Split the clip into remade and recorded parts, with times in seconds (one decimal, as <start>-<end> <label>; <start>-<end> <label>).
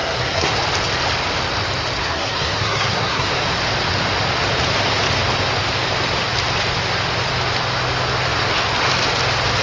0.0-0.6 remade; 0.6-2.0 recorded; 2.0-3.3 remade; 3.3-9.6 recorded